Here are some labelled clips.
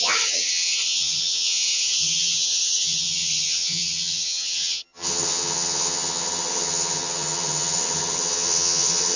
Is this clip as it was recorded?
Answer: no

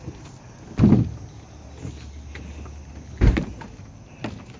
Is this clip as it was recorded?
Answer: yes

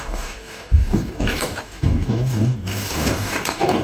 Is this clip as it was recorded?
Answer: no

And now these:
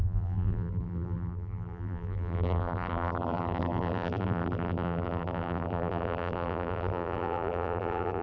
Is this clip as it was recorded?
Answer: no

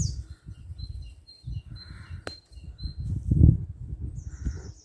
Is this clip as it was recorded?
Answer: yes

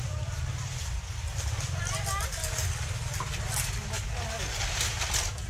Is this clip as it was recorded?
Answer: yes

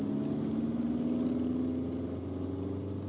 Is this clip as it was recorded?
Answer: yes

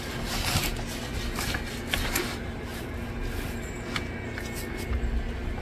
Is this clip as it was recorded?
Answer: yes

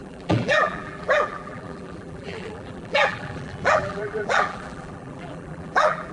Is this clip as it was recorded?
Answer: no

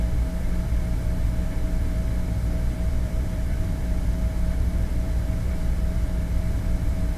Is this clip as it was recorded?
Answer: no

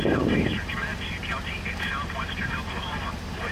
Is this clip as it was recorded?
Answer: yes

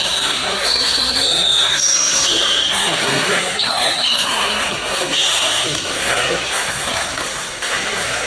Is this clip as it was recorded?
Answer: no